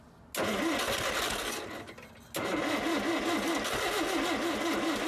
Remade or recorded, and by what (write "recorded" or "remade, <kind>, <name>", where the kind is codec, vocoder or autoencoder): recorded